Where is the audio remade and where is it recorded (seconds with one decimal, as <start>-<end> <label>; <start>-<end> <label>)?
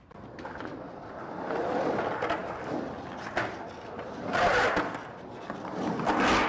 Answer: 0.0-6.5 recorded